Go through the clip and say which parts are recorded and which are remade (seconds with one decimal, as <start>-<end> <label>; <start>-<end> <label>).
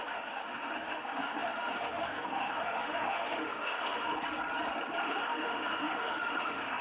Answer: 0.0-4.1 remade; 4.1-5.0 recorded; 5.0-6.8 remade